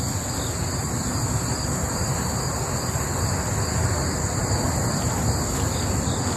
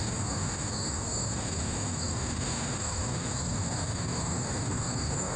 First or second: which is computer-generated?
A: second